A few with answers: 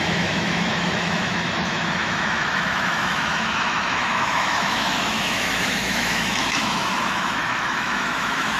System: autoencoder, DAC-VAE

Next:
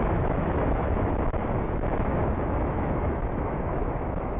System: autoencoder, DAC-VAE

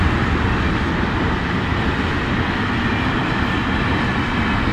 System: none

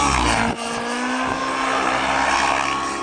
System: none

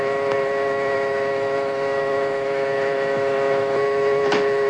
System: autoencoder, DAC-VAE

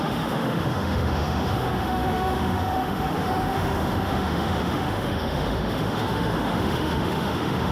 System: autoencoder, DAC-VAE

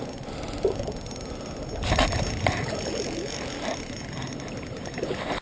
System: none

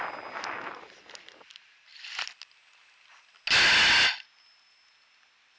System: none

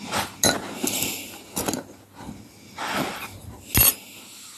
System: none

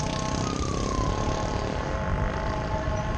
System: none